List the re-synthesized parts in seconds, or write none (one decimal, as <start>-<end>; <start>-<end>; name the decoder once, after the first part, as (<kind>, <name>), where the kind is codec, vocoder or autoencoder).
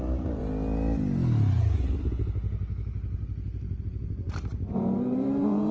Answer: 0.0-0.4 (vocoder, BigVGAN v2); 3.8-5.7